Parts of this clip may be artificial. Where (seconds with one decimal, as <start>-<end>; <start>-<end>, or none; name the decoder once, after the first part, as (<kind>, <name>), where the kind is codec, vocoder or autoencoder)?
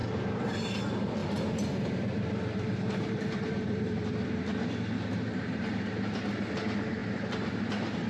0.0-0.6 (vocoder, BigVGAN v2); 1.2-5.9; 7.0-7.6